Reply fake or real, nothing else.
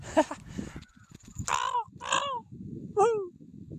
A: real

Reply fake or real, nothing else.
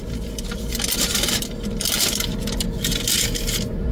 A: real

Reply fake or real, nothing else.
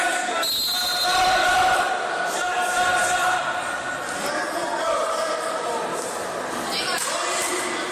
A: real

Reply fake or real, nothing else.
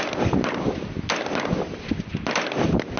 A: real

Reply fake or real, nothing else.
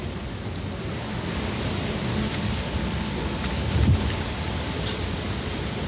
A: real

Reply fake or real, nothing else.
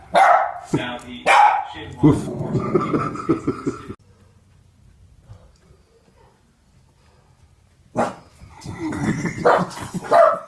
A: real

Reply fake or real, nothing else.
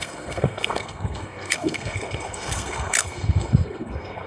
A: fake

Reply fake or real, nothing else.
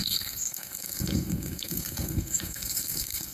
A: fake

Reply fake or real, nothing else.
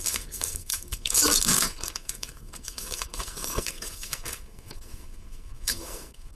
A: fake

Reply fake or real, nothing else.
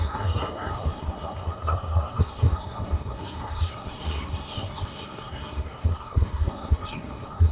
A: fake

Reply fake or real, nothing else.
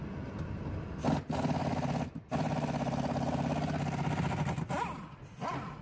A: real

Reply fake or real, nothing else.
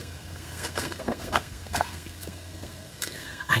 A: fake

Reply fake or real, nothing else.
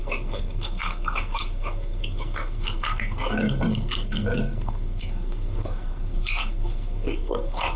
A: fake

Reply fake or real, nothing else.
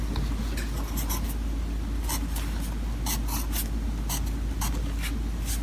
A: real